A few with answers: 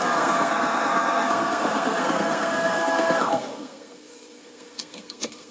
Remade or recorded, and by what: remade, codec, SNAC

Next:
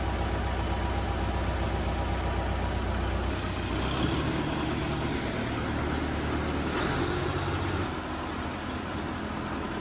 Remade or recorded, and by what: recorded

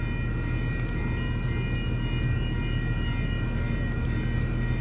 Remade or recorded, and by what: recorded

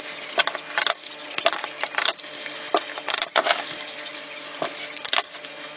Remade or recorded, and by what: recorded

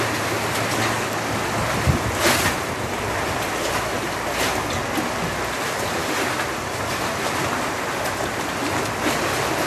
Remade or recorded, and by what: recorded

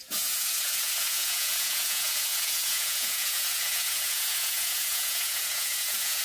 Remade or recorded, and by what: remade, vocoder, Vocos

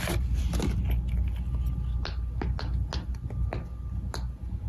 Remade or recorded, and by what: recorded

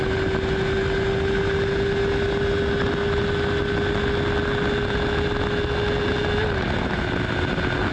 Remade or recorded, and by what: recorded